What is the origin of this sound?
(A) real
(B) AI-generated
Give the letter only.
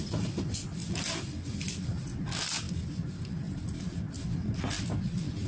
A